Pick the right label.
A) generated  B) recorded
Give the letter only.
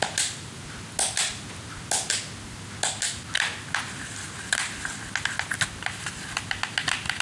B